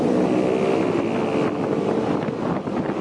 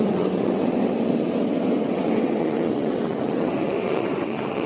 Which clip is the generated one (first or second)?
second